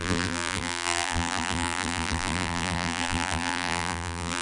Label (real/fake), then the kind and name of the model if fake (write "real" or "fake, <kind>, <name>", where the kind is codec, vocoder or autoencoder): fake, vocoder, BigVGAN v2